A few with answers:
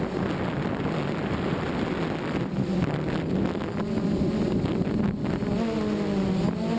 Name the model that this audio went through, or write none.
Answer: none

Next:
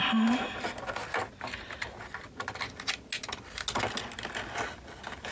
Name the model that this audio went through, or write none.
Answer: none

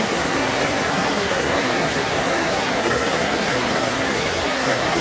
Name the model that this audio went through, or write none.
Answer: codec, SNAC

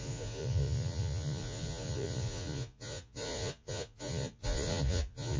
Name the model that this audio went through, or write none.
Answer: vocoder, Vocos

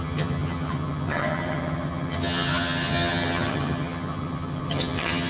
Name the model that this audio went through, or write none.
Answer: vocoder, HiFi-GAN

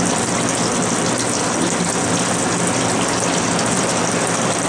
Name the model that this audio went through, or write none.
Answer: none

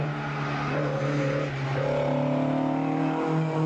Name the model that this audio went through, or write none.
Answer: none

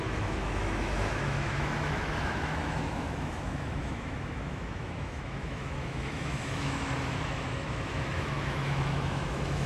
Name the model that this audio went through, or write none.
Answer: autoencoder, DAC-VAE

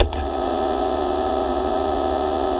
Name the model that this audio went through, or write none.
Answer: vocoder, Vocos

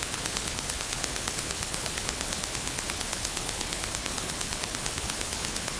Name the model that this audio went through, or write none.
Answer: codec, HILCodec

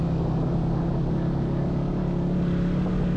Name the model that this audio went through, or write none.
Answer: none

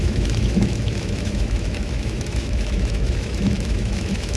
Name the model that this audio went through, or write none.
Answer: autoencoder, DAC-VAE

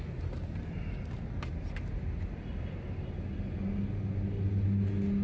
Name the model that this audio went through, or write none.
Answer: none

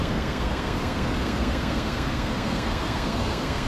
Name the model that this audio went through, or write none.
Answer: codec, SNAC